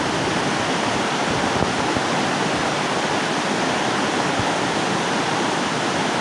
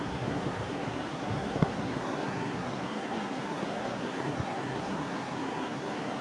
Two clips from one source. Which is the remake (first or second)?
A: second